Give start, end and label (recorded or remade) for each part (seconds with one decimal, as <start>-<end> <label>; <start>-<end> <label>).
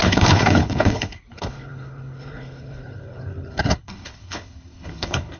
0.0-5.4 remade